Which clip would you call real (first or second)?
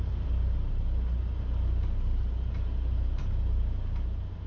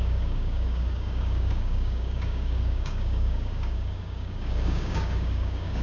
first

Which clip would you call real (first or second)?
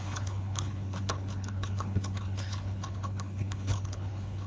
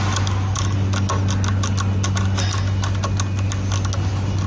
second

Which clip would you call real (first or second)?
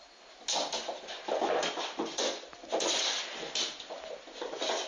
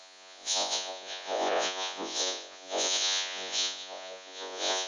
first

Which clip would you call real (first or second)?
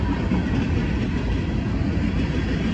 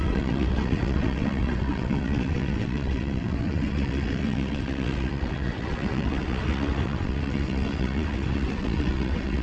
first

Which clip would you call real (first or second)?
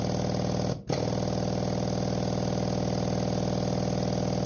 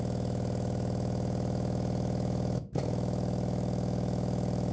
first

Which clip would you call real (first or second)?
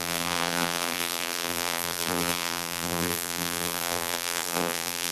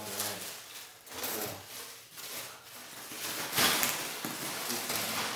second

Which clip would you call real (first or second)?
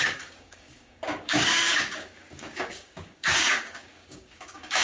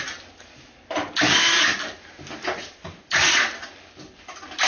second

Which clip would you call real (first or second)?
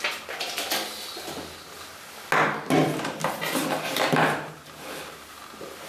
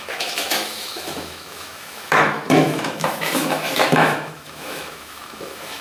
first